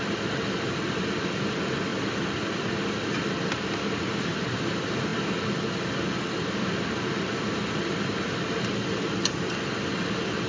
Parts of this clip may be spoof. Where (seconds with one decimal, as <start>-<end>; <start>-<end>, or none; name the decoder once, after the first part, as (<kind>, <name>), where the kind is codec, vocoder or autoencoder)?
none